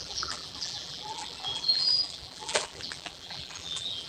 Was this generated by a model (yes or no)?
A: yes